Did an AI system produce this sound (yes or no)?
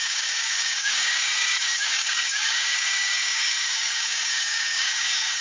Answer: yes